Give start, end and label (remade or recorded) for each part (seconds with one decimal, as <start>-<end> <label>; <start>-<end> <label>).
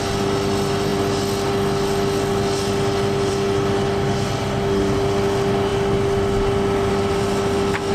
0.0-7.9 recorded